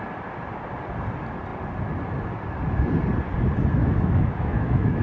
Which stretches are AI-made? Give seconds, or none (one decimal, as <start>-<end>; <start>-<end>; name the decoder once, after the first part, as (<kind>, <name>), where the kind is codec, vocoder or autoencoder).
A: 3.8-5.0 (autoencoder, DAC-VAE)